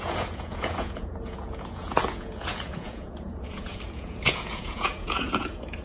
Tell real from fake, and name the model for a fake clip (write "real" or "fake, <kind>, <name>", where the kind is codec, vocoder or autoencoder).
fake, vocoder, Vocos